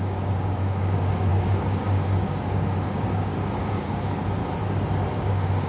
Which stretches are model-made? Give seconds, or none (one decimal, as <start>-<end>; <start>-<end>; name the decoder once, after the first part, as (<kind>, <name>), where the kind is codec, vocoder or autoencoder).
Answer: 0.0-4.4 (codec, DAC); 5.2-5.7